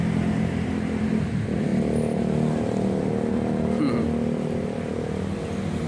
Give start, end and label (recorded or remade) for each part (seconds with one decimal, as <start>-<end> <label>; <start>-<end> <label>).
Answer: 0.0-5.9 recorded